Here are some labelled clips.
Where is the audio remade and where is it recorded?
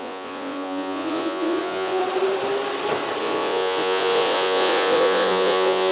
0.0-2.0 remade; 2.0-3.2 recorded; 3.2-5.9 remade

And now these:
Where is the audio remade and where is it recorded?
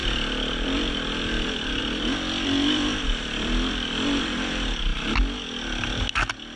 0.0-4.9 remade; 4.9-6.6 recorded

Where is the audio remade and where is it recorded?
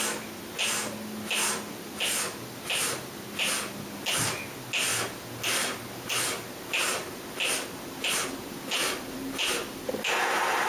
0.0-10.7 recorded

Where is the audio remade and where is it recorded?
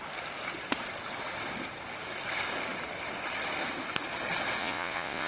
0.0-4.6 recorded; 4.6-5.3 remade